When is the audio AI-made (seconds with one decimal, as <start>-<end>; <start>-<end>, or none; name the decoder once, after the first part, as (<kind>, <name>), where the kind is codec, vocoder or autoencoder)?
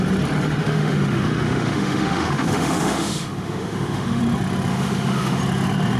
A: 0.6-4.2 (autoencoder, DAC-VAE); 4.7-5.4